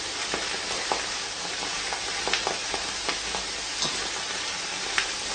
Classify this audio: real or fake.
fake